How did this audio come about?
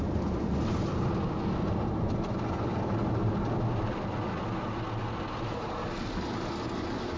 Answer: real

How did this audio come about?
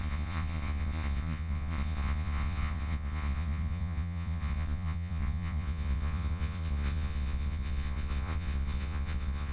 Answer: fake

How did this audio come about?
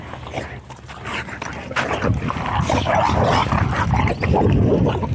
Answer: real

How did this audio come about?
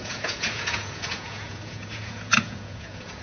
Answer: fake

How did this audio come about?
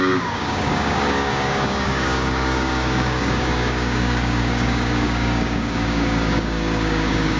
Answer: fake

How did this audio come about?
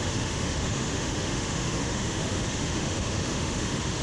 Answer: fake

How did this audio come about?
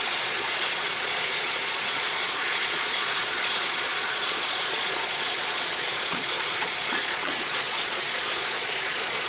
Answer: fake